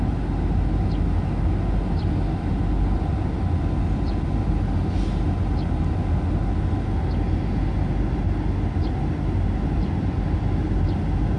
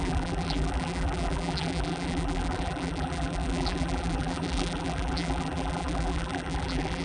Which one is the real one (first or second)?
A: first